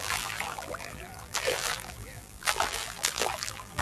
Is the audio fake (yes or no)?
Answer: yes